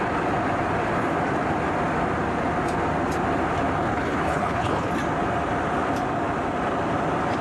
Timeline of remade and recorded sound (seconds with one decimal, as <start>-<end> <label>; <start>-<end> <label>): 0.0-3.8 recorded; 3.8-4.9 remade; 4.9-7.4 recorded